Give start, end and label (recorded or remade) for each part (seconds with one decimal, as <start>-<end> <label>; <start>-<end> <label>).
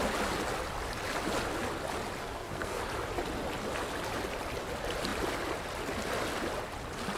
0.0-2.2 recorded; 2.2-2.8 remade; 2.8-7.2 recorded